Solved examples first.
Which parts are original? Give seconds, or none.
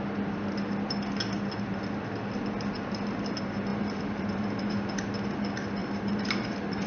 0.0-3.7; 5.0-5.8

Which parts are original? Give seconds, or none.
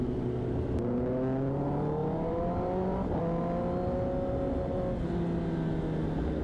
0.0-2.0; 3.2-6.4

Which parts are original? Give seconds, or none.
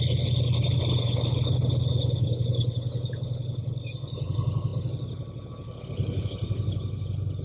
0.0-3.6; 4.3-7.4